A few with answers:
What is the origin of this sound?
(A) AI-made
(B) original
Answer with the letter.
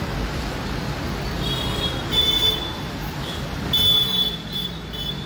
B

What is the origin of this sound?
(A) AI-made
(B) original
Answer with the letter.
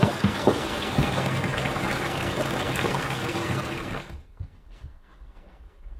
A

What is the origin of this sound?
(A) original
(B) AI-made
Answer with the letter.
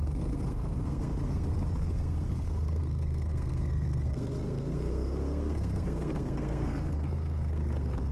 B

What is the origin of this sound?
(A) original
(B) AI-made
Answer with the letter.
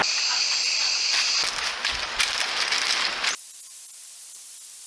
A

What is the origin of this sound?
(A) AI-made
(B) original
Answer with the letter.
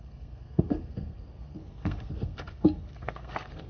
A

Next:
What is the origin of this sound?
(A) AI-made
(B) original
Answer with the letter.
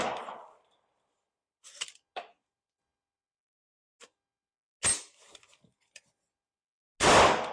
B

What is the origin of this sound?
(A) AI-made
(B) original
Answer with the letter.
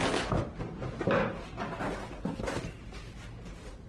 B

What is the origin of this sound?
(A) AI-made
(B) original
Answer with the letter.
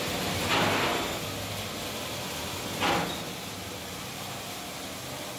B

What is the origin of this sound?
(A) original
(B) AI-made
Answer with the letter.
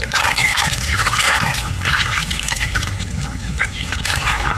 B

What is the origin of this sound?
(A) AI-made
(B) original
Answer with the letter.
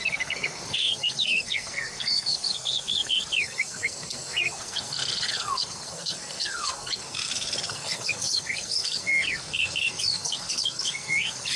A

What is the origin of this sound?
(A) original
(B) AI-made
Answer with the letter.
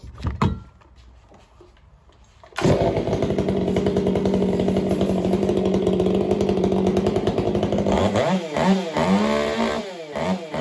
A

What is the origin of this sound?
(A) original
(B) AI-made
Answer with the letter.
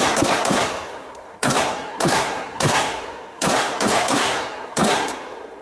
B